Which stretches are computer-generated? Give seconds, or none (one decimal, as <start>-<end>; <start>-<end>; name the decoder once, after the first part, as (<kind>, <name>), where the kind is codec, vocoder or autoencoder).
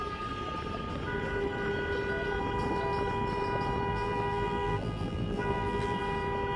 3.9-6.0 (vocoder, BigVGAN v2)